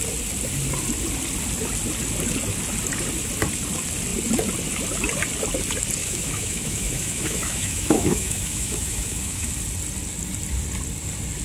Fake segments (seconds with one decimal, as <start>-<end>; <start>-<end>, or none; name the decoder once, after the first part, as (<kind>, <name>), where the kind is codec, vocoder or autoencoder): 6.0-9.5 (autoencoder, DAC-VAE)